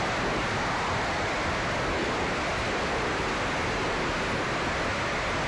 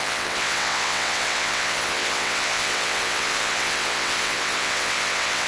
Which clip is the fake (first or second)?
second